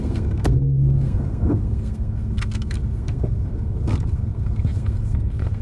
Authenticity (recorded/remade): remade